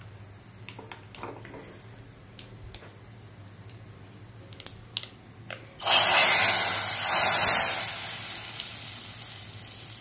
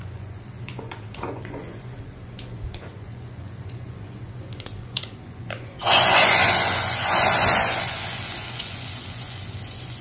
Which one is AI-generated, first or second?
second